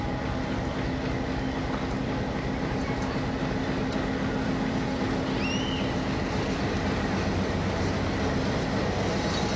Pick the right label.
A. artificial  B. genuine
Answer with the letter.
B